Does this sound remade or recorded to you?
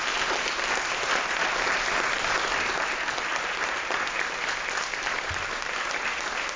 recorded